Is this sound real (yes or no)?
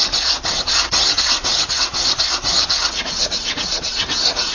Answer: no